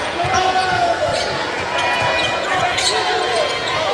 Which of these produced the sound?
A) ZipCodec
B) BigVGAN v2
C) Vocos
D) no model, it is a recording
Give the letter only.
C